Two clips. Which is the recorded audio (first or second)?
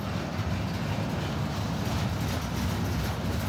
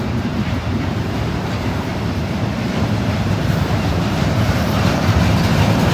first